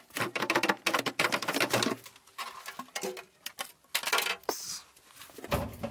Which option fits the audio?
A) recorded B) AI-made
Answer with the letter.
A